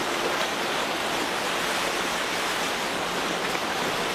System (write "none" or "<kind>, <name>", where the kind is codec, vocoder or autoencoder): none